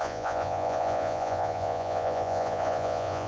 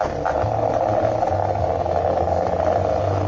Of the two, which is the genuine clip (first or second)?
second